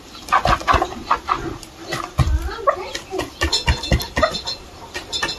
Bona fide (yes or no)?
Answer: yes